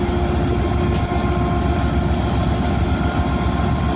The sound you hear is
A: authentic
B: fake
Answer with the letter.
A